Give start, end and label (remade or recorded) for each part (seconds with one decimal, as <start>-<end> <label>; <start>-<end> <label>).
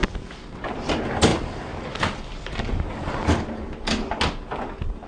0.0-5.1 recorded